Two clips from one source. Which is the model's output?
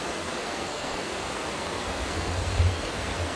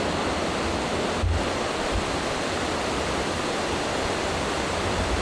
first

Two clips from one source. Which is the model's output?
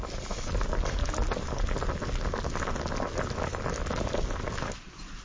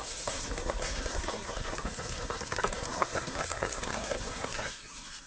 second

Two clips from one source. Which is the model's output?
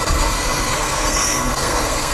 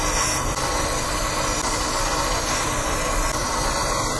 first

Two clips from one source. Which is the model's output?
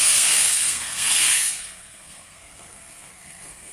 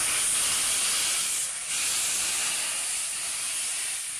first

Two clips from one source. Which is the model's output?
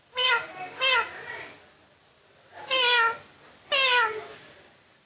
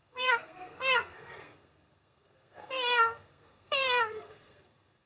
second